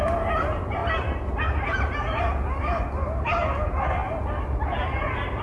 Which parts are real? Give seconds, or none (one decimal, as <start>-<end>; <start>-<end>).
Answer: 0.0-5.4